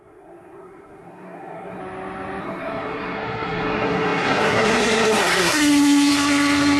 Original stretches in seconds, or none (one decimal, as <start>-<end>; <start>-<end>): 1.8-2.4